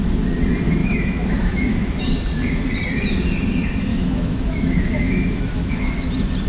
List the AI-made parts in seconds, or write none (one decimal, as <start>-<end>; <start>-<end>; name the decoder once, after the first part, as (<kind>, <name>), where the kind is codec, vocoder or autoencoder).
0.8-2.0 (autoencoder, DAC-VAE); 3.9-6.1